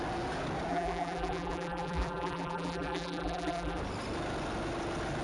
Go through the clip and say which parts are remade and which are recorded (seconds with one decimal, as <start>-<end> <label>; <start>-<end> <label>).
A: 0.0-0.7 recorded; 0.7-3.8 remade; 3.8-5.2 recorded